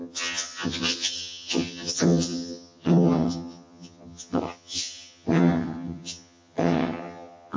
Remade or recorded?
remade